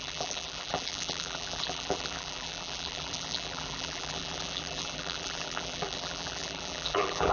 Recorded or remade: remade